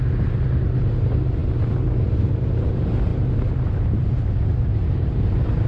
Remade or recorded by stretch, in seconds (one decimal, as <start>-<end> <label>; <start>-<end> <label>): 0.0-3.1 remade; 3.1-4.4 recorded; 4.4-5.7 remade